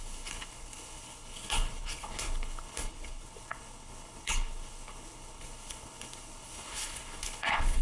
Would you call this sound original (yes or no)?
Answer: no